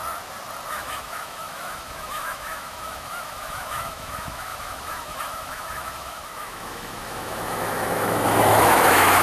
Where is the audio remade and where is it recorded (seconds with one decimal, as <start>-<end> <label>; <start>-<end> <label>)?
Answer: 0.0-0.7 recorded; 0.7-9.2 remade